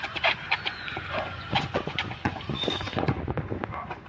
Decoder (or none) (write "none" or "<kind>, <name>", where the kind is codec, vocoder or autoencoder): vocoder, Vocos